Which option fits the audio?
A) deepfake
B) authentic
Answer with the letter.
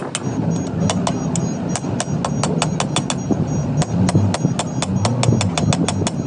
B